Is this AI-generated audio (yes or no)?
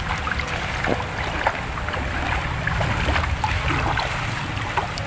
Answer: no